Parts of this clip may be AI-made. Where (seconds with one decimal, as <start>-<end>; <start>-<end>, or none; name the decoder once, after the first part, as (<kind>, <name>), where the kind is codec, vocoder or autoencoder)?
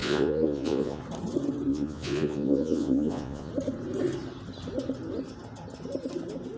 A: 0.0-1.0 (vocoder, Vocos); 1.7-3.5